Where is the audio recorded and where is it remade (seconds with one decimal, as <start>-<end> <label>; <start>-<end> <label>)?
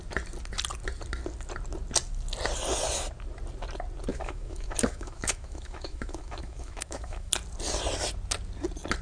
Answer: 0.0-4.1 recorded; 4.1-7.3 remade; 7.3-9.0 recorded